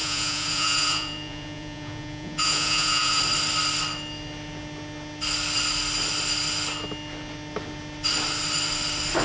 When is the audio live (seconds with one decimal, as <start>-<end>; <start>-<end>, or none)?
3.2-9.2